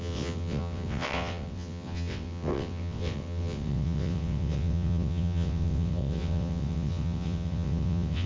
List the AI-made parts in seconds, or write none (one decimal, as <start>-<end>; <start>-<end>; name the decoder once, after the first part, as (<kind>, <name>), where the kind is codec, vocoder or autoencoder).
0.0-8.3 (vocoder, WaveNeXt)